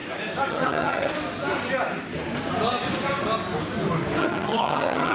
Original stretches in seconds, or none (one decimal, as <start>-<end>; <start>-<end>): 0.0-0.5; 1.1-4.2